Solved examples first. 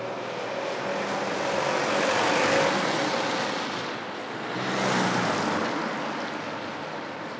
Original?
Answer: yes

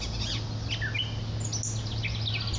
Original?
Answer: yes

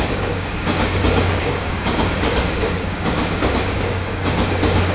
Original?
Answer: no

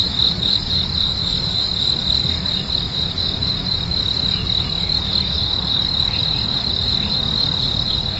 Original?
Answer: no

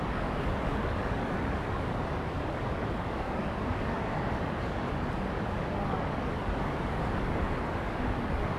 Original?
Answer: no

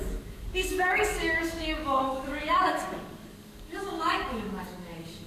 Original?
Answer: no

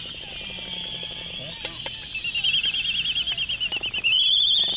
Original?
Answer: yes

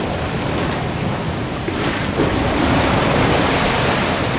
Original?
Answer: yes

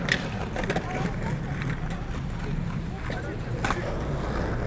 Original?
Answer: yes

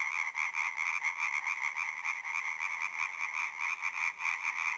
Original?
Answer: yes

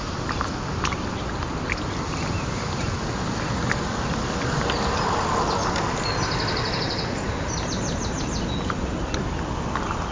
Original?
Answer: yes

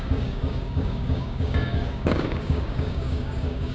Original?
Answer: no